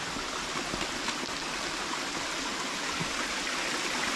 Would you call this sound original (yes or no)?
yes